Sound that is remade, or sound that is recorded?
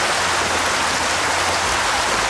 recorded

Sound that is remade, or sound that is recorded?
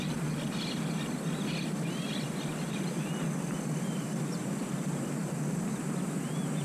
recorded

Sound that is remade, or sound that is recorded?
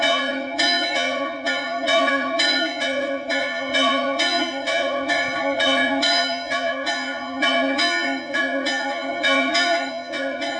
remade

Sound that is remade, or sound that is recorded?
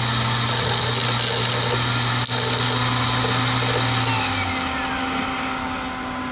recorded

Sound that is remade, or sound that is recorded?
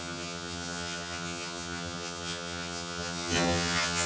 remade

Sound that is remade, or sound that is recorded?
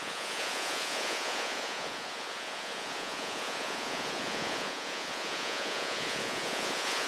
remade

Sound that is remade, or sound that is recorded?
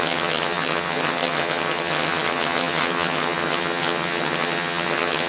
remade